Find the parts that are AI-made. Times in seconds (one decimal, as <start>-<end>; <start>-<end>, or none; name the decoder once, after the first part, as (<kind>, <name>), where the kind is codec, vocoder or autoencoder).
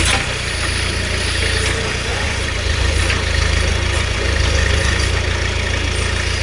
2.1-3.0 (vocoder, Vocos); 3.7-5.1